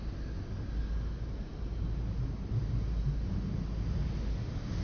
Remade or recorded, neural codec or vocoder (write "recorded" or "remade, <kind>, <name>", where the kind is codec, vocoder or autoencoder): recorded